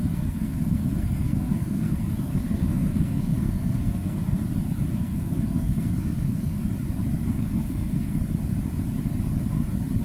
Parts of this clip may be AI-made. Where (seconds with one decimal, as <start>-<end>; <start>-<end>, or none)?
0.0-4.4; 4.9-6.6; 7.3-8.2